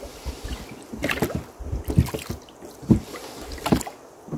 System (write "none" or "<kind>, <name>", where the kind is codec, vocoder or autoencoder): none